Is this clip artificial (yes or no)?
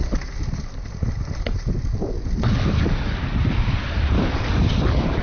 no